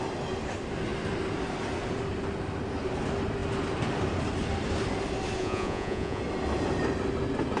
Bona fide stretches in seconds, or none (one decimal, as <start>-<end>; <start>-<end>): 0.0-5.4; 6.2-7.6